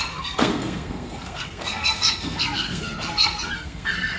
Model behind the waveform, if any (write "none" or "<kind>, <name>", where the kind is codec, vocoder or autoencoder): codec, SNAC